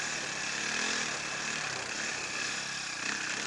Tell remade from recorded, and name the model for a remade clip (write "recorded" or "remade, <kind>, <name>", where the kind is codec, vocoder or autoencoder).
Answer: recorded